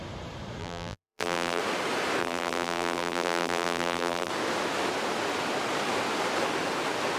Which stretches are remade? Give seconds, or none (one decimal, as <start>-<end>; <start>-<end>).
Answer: 0.6-1.6; 2.2-4.3